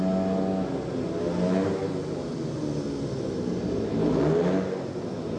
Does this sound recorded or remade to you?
recorded